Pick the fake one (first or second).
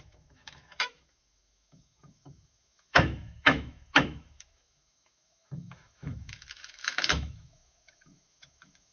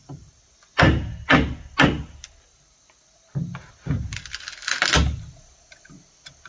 first